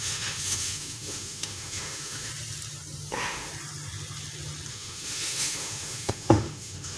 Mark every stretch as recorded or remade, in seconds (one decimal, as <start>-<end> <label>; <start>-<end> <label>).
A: 0.0-2.3 remade; 2.3-3.1 recorded; 3.1-3.5 remade; 3.5-4.7 recorded; 4.7-7.0 remade